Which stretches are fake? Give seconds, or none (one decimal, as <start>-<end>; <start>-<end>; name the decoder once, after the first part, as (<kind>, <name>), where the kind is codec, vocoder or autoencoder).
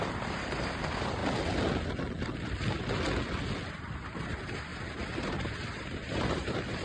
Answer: 0.0-1.2 (vocoder, BigVGAN v2); 3.7-4.7; 5.2-6.8